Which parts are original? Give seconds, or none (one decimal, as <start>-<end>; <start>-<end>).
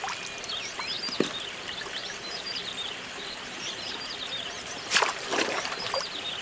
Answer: 0.0-2.0; 5.8-6.4